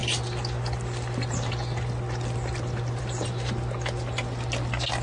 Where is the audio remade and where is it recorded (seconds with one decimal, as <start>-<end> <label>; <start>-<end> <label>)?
0.0-5.0 recorded